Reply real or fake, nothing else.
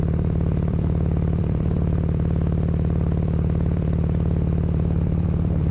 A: fake